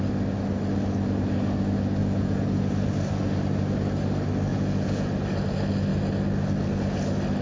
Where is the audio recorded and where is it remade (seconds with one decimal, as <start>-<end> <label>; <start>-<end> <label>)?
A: 0.0-2.0 recorded; 2.0-2.6 remade; 2.6-4.5 recorded; 4.5-5.1 remade; 5.1-7.4 recorded